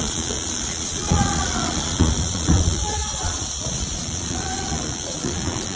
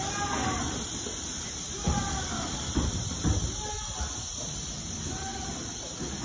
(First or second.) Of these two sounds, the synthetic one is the first